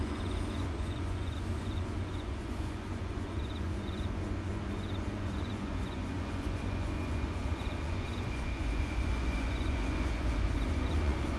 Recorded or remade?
remade